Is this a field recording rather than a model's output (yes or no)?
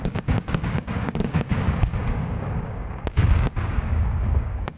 no